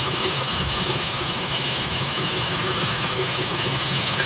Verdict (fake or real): fake